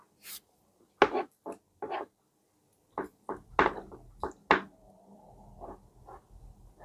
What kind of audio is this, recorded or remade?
recorded